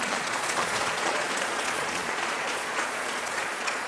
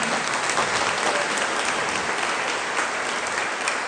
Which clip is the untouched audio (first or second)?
second